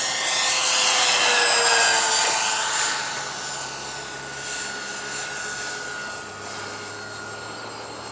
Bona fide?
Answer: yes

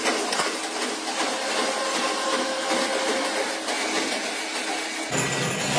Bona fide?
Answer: yes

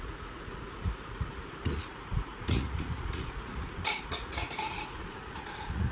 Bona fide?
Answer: no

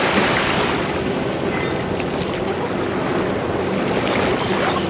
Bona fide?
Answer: yes